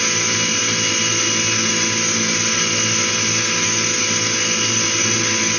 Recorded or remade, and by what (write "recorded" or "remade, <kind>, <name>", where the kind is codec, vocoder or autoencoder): recorded